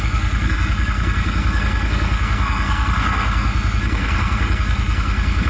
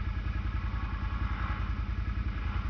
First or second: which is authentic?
second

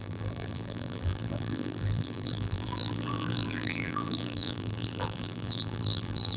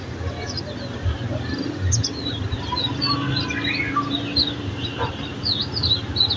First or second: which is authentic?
second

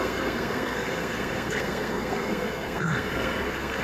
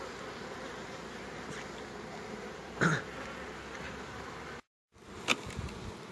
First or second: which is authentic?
second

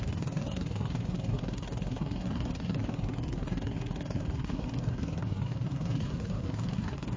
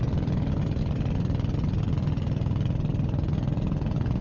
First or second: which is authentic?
second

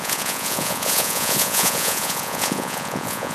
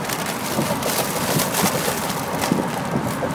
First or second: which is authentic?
second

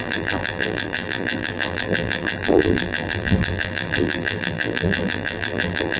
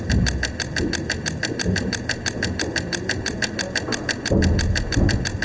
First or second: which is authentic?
second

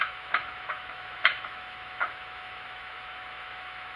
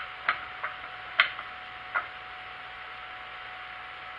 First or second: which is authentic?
second